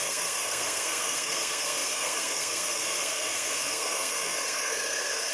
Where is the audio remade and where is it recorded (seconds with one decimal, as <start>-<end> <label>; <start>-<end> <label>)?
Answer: 0.0-5.3 remade